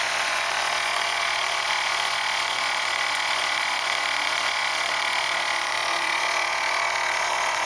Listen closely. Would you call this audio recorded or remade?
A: remade